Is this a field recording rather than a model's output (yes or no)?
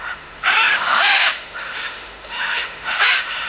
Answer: no